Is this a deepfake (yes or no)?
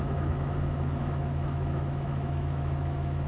yes